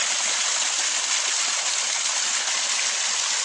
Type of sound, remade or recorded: recorded